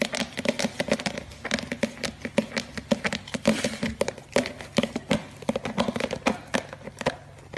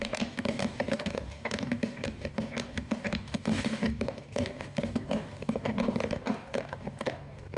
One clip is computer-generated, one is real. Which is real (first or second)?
first